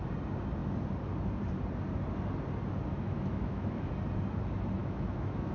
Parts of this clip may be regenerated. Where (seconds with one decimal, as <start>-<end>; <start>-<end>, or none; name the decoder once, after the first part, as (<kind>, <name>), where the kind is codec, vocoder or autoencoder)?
2.9-3.9 (autoencoder, DAC-VAE); 4.8-5.5